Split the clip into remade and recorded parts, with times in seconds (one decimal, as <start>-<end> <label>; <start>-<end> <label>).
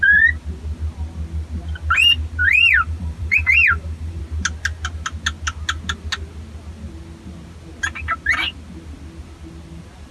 0.0-2.4 recorded; 2.4-4.2 remade; 4.2-10.1 recorded